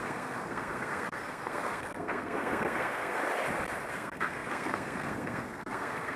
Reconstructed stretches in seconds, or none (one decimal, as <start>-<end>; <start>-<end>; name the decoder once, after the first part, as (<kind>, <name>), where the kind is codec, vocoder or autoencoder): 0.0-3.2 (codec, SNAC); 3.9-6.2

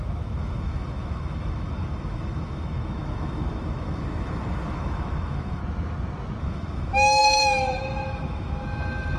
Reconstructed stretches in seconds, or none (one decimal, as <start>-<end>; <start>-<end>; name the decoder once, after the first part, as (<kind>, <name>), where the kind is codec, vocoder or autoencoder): 0.0-5.6 (autoencoder, DAC-VAE); 6.4-9.2

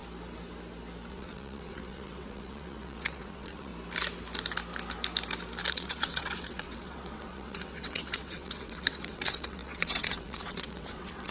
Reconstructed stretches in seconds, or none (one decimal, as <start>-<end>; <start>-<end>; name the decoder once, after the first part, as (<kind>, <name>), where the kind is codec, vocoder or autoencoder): 1.1-3.7 (vocoder, WaveNeXt); 5.7-11.3

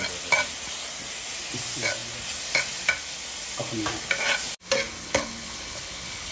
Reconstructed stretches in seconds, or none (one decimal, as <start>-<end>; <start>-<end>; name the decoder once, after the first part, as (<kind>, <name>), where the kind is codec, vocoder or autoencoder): 5.0-6.3 (codec, HILCodec)

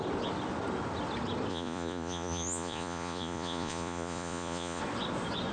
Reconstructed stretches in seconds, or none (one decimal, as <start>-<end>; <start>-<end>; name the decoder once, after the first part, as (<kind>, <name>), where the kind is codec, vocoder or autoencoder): 1.5-4.8 (vocoder, Vocos)

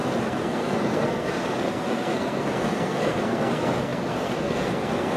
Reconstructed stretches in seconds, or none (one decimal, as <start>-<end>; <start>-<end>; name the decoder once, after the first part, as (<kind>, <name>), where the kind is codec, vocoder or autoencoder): 0.0-5.2 (codec, SNAC)

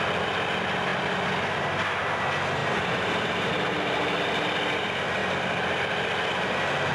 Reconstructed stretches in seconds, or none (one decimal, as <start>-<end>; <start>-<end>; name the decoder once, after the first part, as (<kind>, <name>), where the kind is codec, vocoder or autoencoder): none